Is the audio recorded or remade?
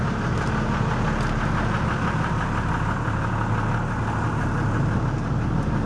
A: recorded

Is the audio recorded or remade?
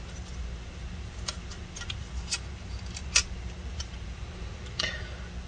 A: recorded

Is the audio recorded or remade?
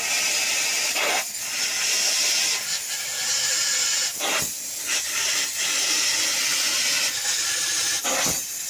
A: recorded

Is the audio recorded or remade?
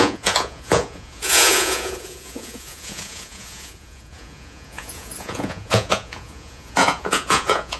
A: remade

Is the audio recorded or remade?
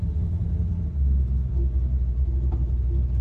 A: recorded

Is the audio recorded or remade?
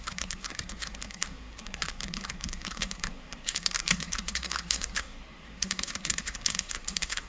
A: remade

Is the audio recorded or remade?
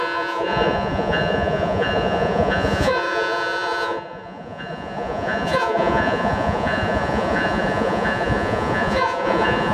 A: remade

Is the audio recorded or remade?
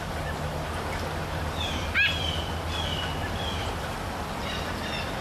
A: recorded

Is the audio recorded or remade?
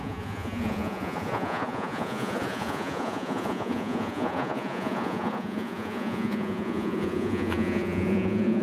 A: remade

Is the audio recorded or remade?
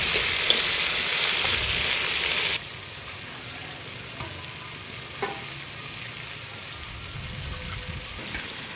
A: recorded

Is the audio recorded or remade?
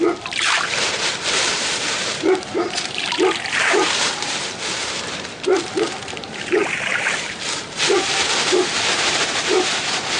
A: remade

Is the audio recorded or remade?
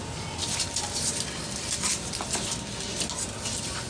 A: recorded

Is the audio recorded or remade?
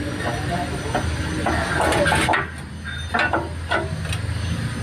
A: recorded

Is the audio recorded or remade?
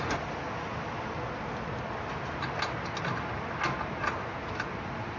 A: recorded